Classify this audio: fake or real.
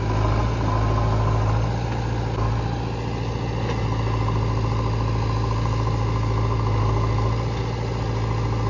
real